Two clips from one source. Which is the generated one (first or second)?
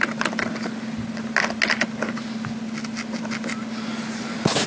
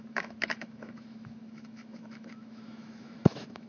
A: second